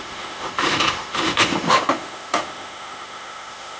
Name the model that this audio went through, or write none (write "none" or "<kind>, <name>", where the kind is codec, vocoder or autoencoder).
autoencoder, DAC-VAE